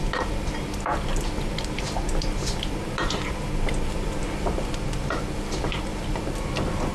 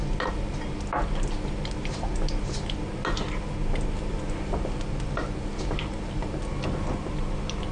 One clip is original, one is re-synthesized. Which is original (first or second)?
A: second